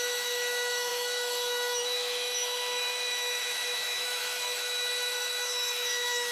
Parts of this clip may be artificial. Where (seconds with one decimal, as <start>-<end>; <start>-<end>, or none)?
0.0-6.3